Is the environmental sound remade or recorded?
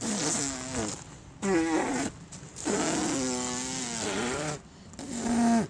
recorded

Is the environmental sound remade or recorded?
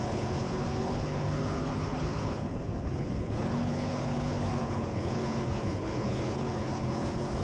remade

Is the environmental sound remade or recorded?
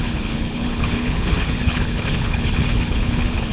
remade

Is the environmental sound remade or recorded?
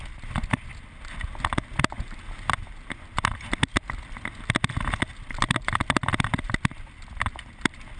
recorded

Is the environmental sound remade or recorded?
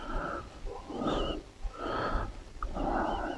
recorded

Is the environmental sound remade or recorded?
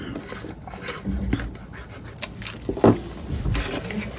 recorded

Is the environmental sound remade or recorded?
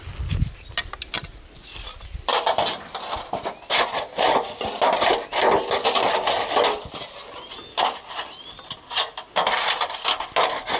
recorded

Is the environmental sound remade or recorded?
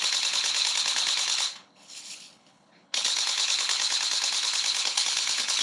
remade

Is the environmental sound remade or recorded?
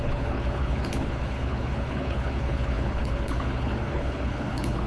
remade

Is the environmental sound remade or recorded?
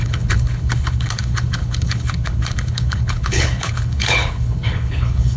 remade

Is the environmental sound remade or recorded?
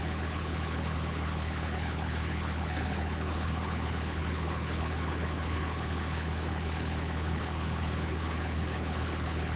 remade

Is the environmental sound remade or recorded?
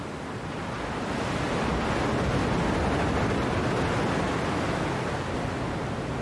recorded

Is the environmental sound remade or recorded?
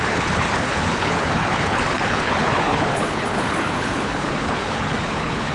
remade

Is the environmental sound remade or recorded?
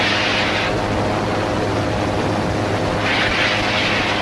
recorded